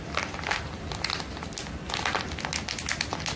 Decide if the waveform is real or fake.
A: real